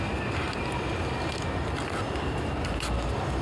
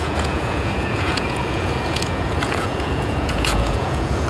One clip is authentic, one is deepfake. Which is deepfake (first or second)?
second